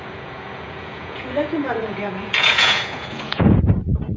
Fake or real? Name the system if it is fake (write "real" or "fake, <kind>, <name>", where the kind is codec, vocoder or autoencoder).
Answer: fake, vocoder, Vocos